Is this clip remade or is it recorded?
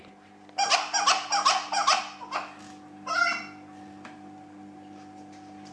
recorded